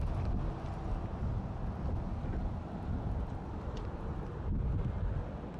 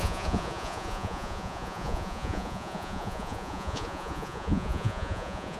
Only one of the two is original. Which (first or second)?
first